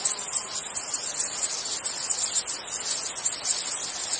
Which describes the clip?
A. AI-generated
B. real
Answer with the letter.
B